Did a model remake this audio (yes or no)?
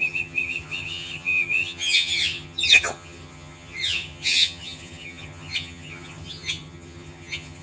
yes